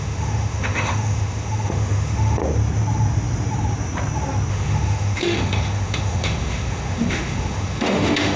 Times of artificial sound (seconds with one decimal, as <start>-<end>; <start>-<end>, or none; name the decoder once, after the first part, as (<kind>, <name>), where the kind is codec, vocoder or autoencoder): 0.0-2.4 (autoencoder, DAC-VAE); 4.5-8.4